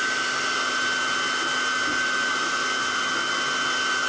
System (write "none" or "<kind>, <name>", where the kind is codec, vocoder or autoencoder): none